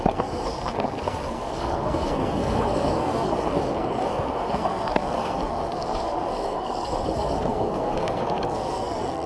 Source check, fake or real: fake